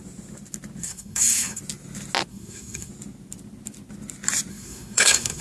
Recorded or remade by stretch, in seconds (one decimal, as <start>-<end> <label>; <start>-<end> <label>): 0.0-0.8 recorded; 0.8-1.6 remade; 1.6-2.3 recorded; 2.3-2.9 remade; 2.9-4.5 recorded; 4.5-5.4 remade